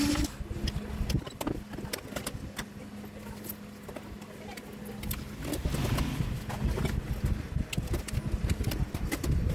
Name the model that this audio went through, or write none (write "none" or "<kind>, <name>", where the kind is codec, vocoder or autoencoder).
none